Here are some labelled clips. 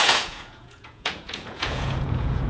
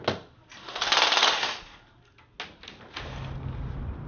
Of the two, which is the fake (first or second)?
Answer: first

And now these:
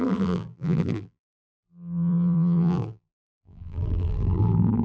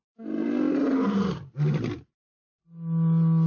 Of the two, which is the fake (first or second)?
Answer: first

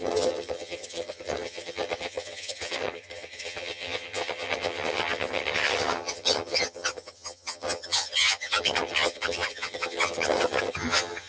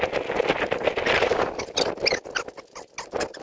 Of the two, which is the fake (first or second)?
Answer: first